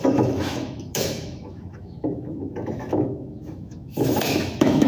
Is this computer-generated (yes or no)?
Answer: yes